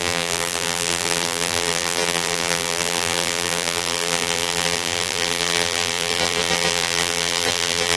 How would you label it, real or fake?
fake